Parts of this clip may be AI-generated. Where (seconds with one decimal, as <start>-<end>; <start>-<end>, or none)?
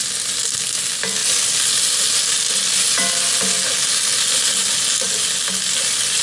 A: none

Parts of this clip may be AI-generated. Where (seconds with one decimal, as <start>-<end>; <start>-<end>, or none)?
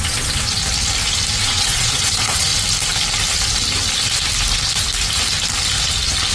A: 0.0-0.6; 1.4-2.5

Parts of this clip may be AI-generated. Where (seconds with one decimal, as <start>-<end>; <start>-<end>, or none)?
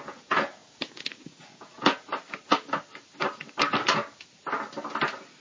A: 0.0-2.1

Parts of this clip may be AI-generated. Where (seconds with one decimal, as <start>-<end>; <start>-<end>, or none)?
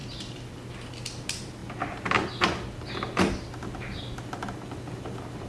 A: none